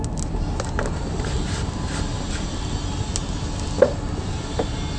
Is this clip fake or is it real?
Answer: real